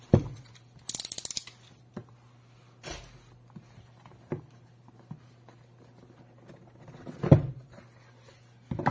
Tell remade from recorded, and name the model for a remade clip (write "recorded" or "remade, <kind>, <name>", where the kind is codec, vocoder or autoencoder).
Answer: recorded